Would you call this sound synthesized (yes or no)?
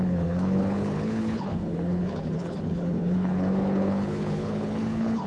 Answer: yes